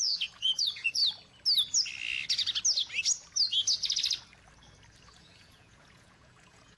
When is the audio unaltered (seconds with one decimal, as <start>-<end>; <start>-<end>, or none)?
1.0-5.1